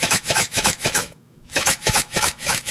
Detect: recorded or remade remade